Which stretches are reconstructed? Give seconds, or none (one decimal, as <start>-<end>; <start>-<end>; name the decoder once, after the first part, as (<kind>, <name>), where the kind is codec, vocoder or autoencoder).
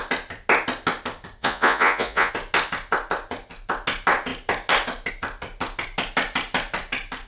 1.4-2.3 (vocoder, Vocos)